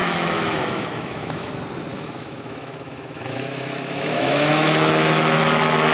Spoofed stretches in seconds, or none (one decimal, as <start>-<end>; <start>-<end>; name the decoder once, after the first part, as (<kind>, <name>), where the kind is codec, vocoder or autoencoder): 0.0-1.5 (autoencoder, DAC-VAE); 1.9-5.4